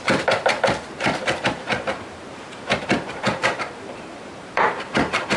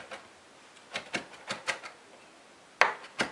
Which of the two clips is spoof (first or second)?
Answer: first